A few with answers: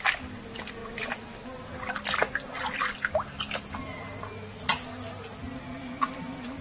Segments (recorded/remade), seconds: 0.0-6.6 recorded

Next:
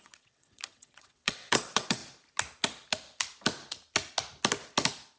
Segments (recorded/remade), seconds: 0.0-2.0 remade; 2.0-5.2 recorded

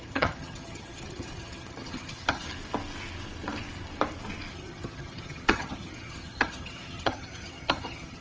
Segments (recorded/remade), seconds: 0.0-2.5 remade; 2.5-4.5 recorded; 4.5-8.2 remade